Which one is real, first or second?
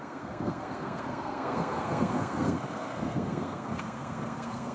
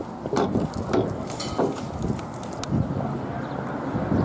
second